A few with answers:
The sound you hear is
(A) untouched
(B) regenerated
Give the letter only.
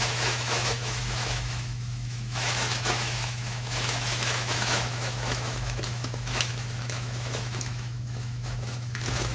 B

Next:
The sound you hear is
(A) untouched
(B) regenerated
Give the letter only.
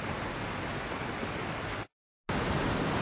A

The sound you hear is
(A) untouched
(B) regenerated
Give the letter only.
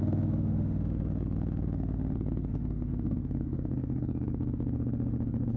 B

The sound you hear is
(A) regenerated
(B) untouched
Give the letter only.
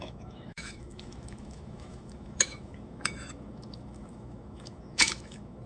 A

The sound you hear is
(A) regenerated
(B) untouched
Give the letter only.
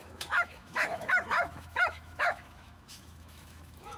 A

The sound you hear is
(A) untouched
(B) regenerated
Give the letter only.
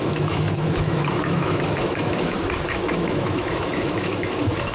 B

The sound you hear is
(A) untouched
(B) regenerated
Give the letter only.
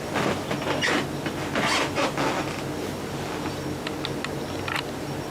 A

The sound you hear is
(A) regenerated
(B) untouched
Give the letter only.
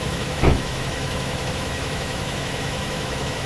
A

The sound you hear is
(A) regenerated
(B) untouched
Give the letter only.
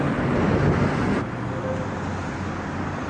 B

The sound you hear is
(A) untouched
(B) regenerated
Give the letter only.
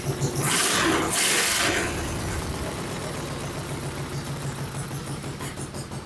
A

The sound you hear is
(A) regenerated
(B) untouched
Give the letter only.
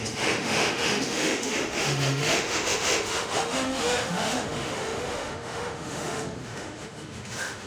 A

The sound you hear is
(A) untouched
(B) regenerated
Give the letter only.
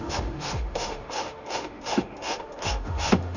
B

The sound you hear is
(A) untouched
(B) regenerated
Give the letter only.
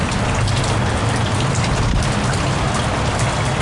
A